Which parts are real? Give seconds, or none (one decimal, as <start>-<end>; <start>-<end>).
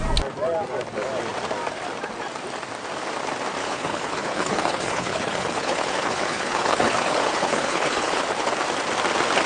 0.0-3.6; 8.2-9.5